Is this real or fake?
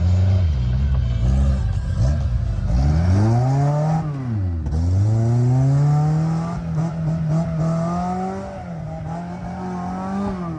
real